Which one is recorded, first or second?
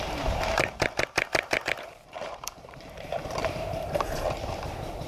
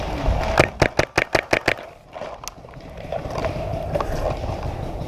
second